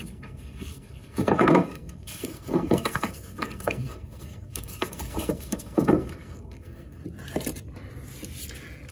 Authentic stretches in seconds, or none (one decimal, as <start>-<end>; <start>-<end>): 7.0-8.9